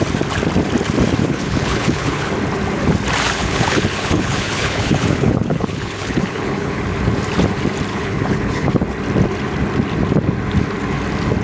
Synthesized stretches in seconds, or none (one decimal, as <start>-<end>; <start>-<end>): 1.2-2.3; 3.4-6.8; 7.9-8.7